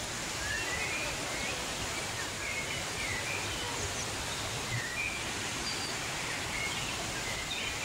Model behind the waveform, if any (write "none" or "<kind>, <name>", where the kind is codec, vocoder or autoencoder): none